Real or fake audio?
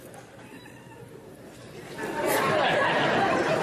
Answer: real